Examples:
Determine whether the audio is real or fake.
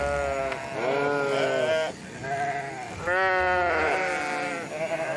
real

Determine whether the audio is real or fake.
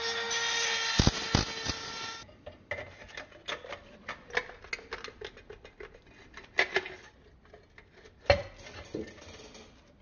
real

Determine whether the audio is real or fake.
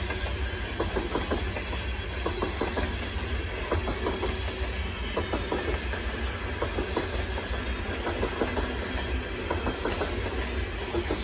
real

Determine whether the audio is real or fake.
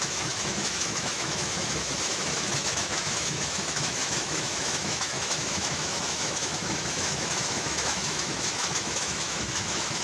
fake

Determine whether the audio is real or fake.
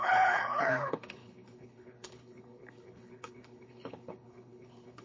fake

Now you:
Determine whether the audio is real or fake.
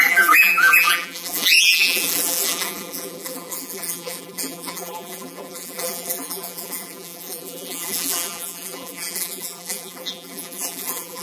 fake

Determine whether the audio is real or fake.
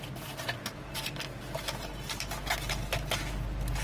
real